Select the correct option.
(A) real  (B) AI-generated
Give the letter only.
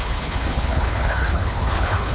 B